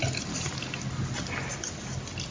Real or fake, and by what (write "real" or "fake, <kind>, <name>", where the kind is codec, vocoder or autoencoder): real